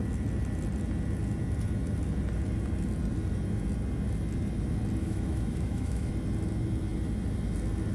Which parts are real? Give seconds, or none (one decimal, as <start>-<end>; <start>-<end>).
0.0-5.0; 6.1-7.9